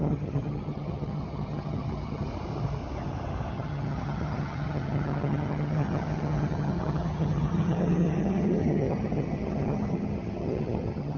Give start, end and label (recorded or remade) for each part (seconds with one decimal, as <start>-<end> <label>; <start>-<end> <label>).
0.0-2.3 remade; 2.3-3.5 recorded; 3.5-11.2 remade